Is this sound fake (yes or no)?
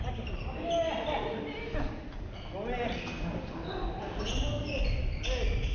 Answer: no